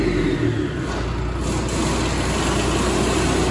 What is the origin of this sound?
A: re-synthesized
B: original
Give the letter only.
B